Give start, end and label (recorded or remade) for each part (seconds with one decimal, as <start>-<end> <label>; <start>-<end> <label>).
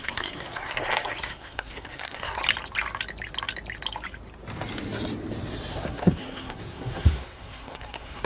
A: 0.0-2.4 remade; 2.4-5.7 recorded; 5.7-8.3 remade